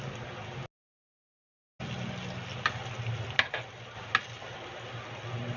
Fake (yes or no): no